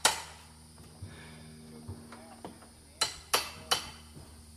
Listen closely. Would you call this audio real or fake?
real